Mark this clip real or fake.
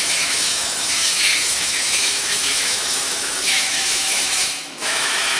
fake